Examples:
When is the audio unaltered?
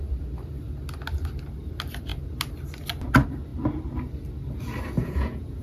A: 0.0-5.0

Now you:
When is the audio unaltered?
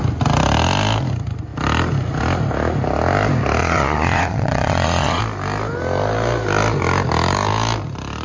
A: 0.0-3.6; 5.2-8.2